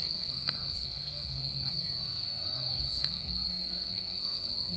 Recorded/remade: remade